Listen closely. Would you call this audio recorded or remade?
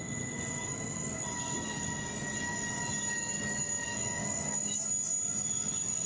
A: recorded